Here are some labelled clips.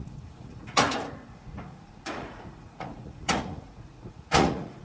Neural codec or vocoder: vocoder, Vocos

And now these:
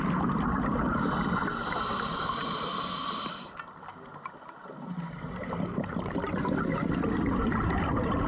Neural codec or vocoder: none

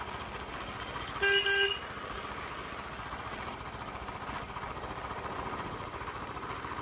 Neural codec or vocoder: none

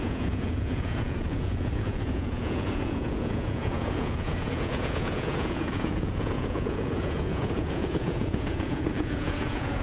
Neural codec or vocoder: vocoder, Vocos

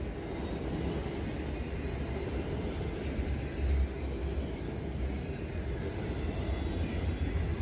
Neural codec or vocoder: none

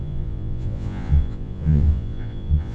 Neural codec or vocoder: vocoder, Vocos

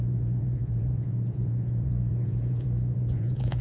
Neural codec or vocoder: vocoder, Vocos